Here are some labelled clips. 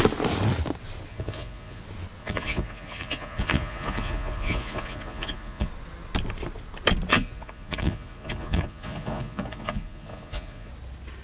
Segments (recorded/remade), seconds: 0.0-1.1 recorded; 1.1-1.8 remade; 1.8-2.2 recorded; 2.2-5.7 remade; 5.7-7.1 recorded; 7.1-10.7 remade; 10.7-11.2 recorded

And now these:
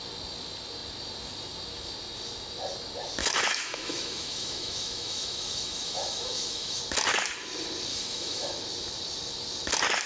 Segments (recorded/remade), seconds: 0.0-3.2 recorded; 3.2-6.8 remade; 6.8-7.9 recorded; 7.9-8.5 remade; 8.5-10.1 recorded

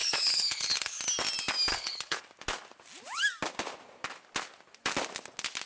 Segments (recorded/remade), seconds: 0.0-1.0 remade; 1.0-1.7 recorded; 1.7-2.2 remade; 2.2-5.7 recorded